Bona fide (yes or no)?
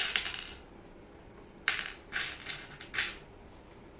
yes